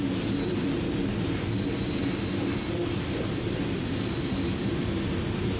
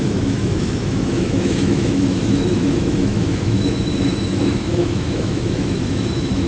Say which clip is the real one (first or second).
first